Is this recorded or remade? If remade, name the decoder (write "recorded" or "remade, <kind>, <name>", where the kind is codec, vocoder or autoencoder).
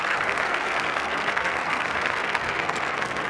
remade, codec, SNAC